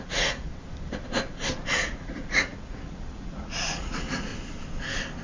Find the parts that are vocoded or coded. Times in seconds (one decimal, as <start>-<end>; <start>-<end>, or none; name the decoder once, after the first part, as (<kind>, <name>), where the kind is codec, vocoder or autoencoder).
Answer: 0.0-0.5 (vocoder, Vocos); 1.7-4.3